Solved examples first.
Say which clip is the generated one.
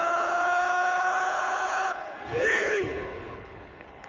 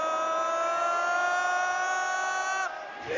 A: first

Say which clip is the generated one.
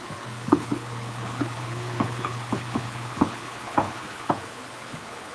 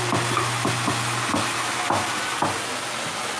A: first